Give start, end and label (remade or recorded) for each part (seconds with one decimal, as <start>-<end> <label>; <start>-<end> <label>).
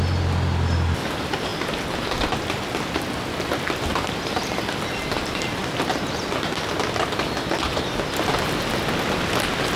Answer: 0.0-9.8 recorded